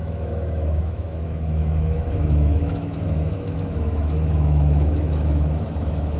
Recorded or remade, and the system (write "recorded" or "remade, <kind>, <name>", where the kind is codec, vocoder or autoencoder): remade, autoencoder, DAC-VAE